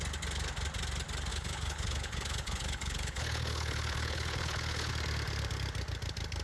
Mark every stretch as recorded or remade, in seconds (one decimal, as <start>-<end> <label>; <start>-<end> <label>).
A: 0.0-1.3 recorded; 1.3-4.9 remade; 4.9-6.4 recorded